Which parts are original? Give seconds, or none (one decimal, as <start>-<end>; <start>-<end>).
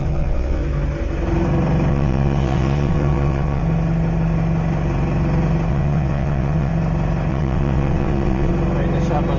0.6-1.9; 3.6-5.7; 6.7-7.3; 8.5-9.4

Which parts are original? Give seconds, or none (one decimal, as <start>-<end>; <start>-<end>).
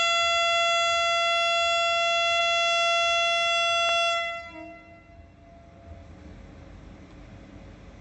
0.0-8.0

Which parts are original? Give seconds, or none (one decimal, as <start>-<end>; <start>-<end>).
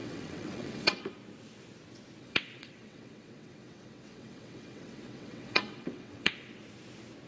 1.0-2.2; 6.6-7.3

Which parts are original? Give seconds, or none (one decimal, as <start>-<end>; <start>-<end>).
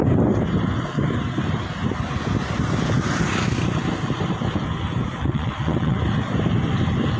0.0-5.2; 6.0-7.2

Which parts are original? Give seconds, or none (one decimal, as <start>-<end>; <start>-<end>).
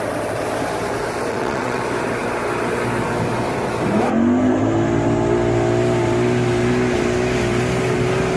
0.0-1.3; 1.8-8.4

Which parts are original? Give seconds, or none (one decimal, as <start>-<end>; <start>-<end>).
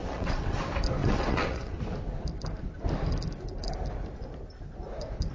0.6-1.0; 1.8-5.3